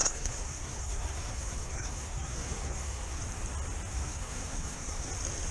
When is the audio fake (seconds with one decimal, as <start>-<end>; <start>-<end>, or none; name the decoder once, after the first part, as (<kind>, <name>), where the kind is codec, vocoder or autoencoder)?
0.0-3.2 (codec, SNAC); 3.9-5.1